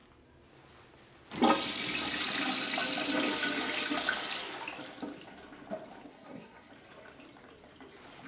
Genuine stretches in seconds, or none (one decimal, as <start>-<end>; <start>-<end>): 0.0-6.1; 6.7-8.3